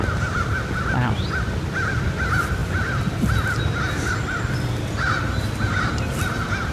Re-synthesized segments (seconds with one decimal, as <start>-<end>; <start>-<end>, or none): none